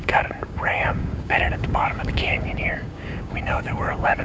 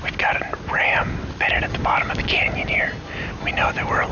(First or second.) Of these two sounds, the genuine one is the second